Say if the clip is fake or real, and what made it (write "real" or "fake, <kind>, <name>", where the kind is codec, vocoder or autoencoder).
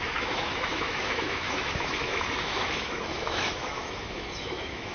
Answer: fake, autoencoder, DAC-VAE